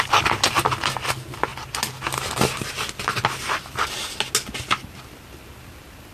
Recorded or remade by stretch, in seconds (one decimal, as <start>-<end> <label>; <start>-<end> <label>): 0.0-6.1 recorded